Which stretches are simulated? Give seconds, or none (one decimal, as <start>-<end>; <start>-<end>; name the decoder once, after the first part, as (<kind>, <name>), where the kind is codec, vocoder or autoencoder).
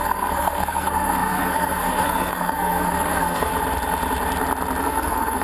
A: 0.0-3.5 (codec, SNAC); 4.8-5.4